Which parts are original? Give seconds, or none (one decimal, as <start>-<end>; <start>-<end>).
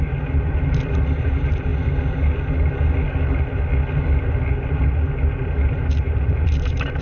1.7-4.5